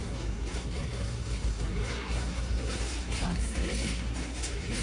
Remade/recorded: remade